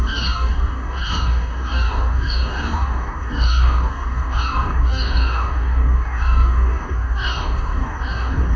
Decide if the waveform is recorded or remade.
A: remade